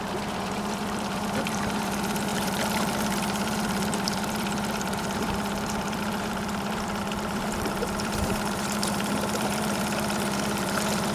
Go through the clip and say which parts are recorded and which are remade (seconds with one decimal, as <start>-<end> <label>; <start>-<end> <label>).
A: 0.0-11.1 remade